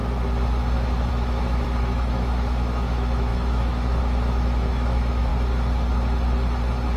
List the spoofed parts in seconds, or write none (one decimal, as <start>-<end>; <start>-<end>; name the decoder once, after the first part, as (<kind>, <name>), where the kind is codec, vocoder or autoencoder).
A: 1.1-5.3 (autoencoder, DAC-VAE)